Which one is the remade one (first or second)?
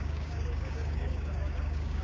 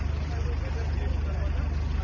first